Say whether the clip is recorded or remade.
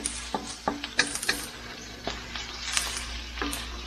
recorded